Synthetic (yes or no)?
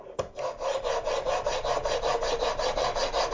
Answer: no